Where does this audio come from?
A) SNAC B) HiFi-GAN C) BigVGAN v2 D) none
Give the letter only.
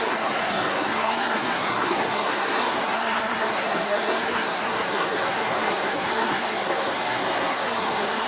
A